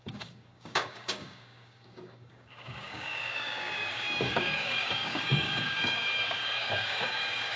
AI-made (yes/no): yes